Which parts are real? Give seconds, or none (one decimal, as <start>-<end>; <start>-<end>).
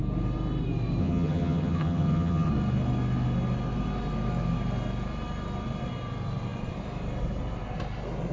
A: 0.0-1.0; 2.5-8.3